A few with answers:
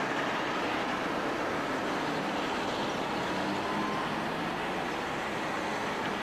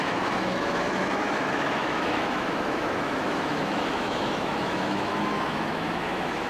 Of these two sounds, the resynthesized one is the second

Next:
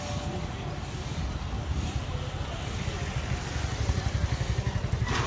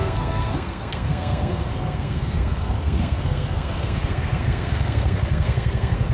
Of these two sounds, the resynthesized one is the second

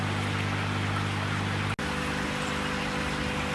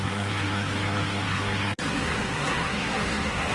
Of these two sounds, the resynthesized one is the second